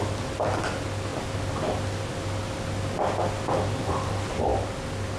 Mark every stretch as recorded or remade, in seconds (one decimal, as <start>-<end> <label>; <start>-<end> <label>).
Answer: 0.0-5.2 recorded

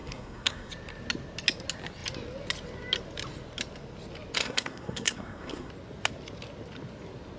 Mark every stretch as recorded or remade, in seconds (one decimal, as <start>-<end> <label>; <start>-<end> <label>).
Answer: 0.0-0.7 remade; 0.7-4.4 recorded; 4.4-5.7 remade; 5.7-7.4 recorded

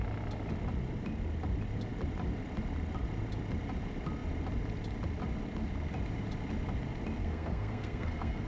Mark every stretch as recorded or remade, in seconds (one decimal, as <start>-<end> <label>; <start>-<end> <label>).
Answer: 0.0-7.2 recorded; 7.2-8.5 remade

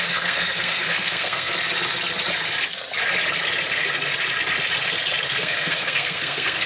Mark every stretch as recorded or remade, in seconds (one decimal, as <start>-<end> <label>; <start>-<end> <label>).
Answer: 0.0-1.5 remade; 1.5-5.3 recorded; 5.3-6.7 remade